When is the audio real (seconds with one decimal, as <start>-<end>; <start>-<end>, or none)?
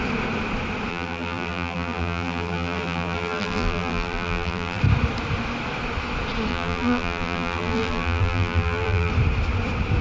0.0-0.9; 4.8-6.5; 9.1-10.0